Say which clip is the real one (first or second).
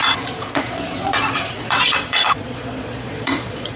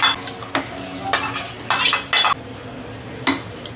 second